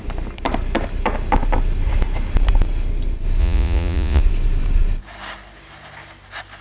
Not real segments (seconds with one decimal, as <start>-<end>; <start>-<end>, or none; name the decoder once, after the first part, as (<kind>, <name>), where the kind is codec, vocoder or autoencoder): 3.4-4.2 (vocoder, Vocos)